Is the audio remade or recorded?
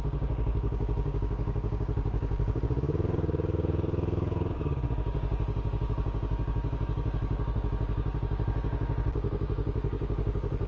remade